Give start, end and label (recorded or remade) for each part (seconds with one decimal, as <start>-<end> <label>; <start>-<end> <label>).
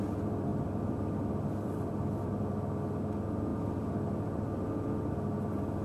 0.0-0.5 recorded; 0.5-2.5 remade; 2.5-3.5 recorded; 3.5-4.9 remade; 4.9-5.8 recorded